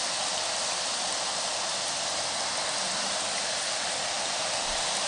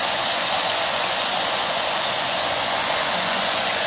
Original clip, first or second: first